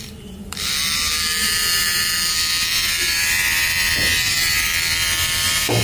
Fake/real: fake